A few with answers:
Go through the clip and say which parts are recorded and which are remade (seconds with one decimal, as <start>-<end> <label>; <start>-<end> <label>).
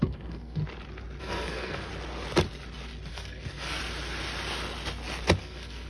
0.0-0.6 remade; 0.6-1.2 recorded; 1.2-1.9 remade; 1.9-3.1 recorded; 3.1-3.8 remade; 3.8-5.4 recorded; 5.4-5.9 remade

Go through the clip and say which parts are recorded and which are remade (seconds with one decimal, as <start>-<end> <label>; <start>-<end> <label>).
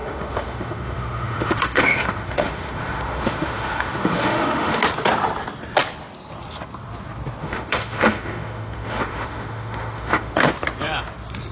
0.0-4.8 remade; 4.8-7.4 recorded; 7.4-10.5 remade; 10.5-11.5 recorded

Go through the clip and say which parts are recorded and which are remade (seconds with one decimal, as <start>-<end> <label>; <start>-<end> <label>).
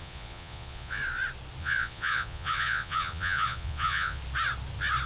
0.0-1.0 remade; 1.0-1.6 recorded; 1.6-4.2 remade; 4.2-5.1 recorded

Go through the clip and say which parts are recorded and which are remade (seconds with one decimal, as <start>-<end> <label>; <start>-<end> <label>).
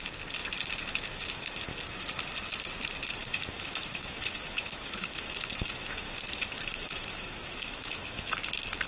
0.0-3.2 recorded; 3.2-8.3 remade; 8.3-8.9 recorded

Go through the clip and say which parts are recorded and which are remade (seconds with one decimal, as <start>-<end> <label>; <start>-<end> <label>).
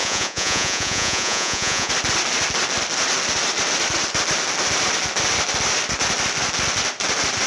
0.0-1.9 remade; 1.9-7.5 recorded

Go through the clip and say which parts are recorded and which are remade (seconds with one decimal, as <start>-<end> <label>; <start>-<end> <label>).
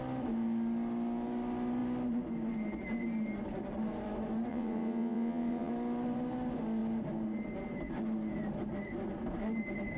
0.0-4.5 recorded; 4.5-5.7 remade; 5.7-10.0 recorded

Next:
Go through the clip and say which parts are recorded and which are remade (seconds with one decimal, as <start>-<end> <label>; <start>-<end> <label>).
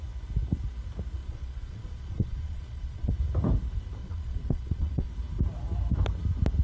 0.0-1.2 recorded; 1.2-3.1 remade; 3.1-4.0 recorded; 4.0-5.1 remade; 5.1-6.6 recorded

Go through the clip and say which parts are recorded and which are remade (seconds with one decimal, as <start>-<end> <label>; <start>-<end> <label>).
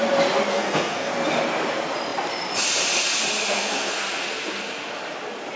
0.0-0.5 recorded; 0.5-1.1 remade; 1.1-3.4 recorded; 3.4-3.9 remade; 3.9-5.6 recorded